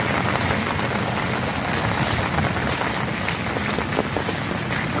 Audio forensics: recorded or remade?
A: recorded